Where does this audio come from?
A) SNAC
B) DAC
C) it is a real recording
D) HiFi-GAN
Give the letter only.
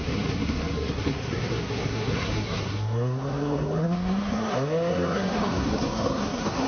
A